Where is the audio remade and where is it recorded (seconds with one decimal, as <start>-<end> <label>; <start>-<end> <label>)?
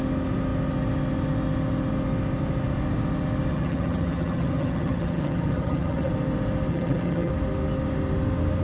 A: 0.0-3.5 recorded; 3.5-6.1 remade; 6.1-6.7 recorded; 6.7-7.3 remade; 7.3-8.6 recorded